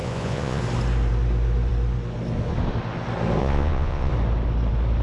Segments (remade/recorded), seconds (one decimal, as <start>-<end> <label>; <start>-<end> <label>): 0.0-0.6 remade; 0.6-3.4 recorded; 3.4-4.1 remade; 4.1-5.0 recorded